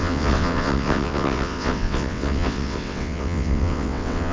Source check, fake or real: fake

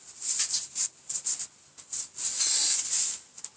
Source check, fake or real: real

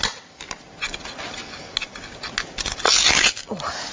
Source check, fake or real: real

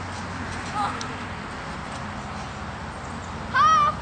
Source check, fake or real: real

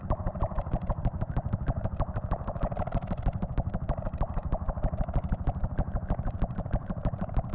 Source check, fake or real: real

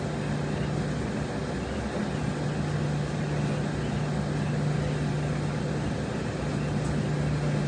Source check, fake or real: real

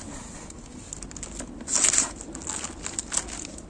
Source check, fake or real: real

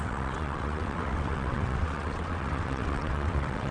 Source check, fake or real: fake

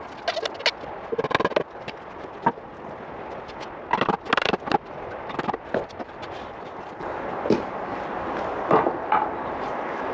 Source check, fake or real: real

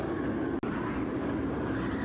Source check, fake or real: real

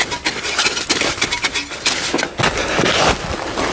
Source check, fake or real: real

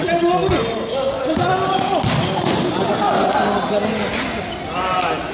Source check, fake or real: real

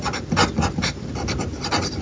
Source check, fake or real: real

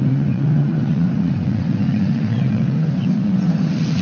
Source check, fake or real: fake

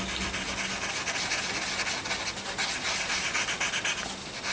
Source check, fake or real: real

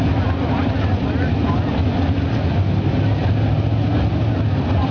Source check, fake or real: real